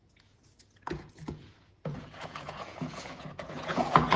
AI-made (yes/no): yes